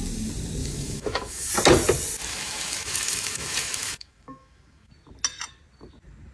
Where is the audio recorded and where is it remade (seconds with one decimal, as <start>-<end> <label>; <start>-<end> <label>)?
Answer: 0.0-0.6 recorded; 0.6-1.5 remade; 1.5-2.3 recorded; 2.3-4.9 remade; 4.9-6.3 recorded